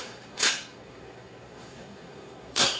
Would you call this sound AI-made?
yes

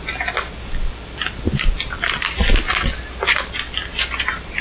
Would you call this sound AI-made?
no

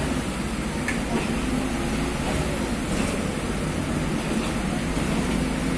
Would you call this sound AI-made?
no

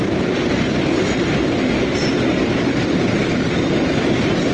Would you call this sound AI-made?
no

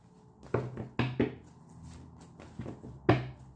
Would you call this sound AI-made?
no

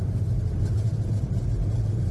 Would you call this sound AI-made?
yes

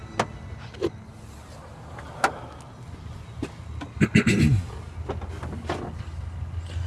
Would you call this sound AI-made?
no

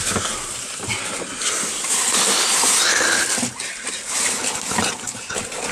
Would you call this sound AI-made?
no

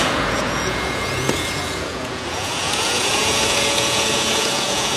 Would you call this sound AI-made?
yes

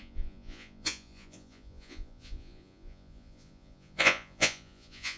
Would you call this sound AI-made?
yes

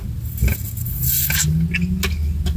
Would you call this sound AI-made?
no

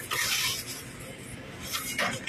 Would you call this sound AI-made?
no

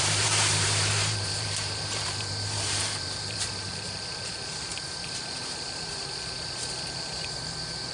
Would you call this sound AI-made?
yes